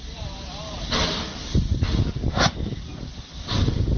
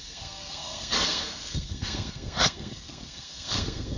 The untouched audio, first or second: first